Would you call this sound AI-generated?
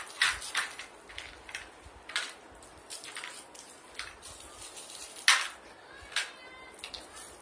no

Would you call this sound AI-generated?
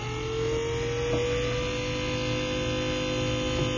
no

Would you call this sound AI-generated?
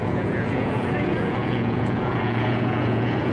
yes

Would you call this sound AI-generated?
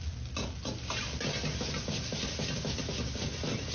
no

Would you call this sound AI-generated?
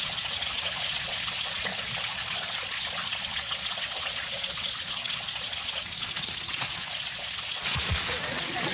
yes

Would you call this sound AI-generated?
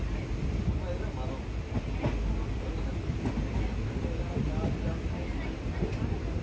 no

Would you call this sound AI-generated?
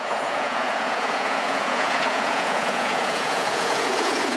yes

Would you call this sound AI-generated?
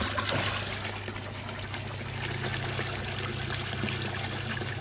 no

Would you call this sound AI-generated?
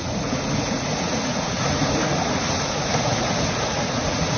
yes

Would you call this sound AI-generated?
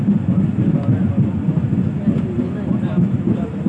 no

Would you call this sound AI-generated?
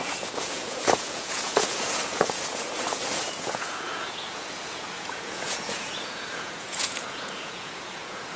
yes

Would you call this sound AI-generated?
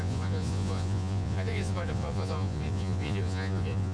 yes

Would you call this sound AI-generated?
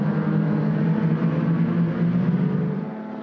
no